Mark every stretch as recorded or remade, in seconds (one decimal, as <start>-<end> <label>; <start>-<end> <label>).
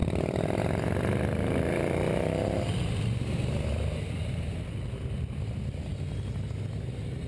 0.0-0.6 remade; 0.6-1.3 recorded; 1.3-4.6 remade; 4.6-7.3 recorded